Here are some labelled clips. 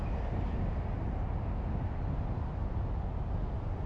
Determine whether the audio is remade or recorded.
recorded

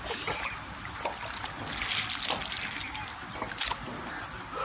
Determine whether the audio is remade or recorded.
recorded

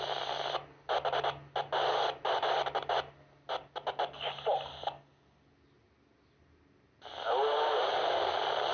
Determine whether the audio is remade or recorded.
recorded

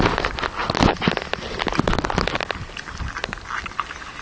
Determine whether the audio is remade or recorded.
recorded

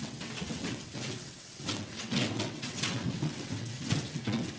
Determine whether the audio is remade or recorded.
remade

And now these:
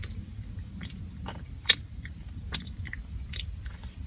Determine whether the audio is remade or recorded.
remade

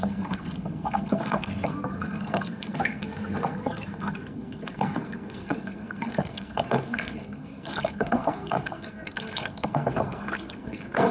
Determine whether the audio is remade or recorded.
remade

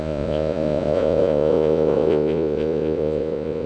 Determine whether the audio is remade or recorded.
remade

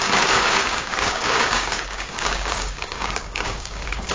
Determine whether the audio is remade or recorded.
remade